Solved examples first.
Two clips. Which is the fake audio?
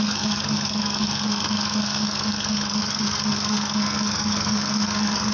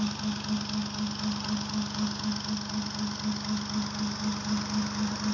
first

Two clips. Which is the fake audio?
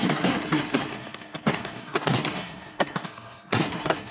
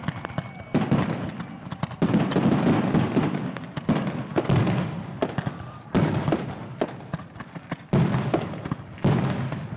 first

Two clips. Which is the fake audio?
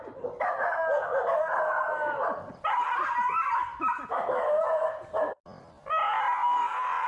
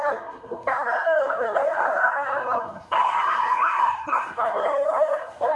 second